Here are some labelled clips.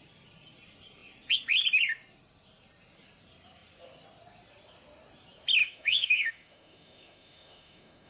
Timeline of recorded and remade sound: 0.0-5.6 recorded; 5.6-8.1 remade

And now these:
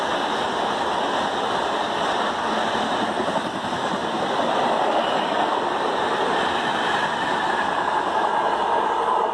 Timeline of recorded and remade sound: 0.0-9.3 recorded

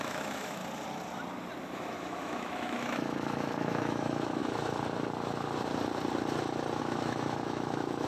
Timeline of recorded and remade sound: 0.0-0.6 remade; 0.6-1.6 recorded; 1.6-4.4 remade; 4.4-6.8 recorded; 6.8-8.1 remade